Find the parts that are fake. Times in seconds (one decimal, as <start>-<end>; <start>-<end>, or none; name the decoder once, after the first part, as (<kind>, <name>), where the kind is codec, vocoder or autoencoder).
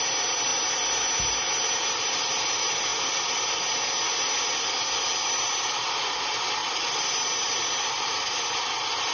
none